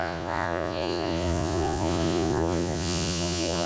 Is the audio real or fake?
fake